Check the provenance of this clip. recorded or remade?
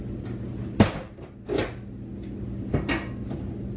recorded